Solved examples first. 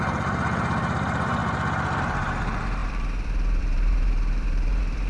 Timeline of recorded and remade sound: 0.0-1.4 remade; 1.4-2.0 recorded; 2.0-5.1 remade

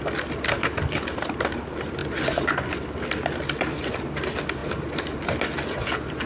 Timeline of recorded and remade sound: 0.0-6.3 recorded